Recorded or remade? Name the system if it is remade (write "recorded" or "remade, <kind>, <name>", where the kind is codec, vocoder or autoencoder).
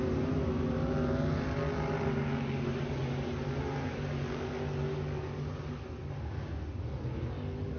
recorded